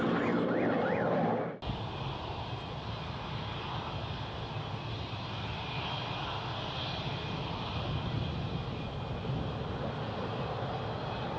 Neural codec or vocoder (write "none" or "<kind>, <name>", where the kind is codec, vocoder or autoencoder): none